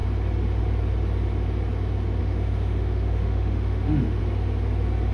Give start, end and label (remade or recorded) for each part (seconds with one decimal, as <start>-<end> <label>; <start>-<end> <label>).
0.0-2.2 recorded; 2.2-4.2 remade; 4.2-5.1 recorded